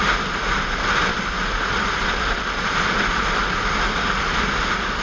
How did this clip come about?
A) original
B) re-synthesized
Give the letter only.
A